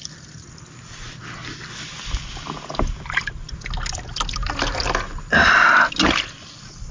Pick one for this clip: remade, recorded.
recorded